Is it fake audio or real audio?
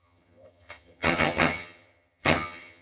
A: fake